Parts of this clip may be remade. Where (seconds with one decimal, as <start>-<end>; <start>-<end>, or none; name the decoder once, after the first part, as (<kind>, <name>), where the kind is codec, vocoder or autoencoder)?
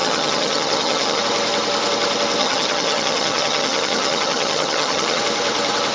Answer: 0.0-1.2 (vocoder, HiFi-GAN); 2.4-5.2